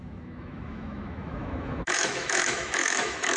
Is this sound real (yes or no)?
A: no